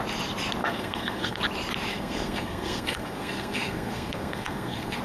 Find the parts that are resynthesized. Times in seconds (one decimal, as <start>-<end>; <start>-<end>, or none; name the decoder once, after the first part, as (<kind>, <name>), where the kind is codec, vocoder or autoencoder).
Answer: 0.6-1.4 (codec, SNAC); 1.9-5.0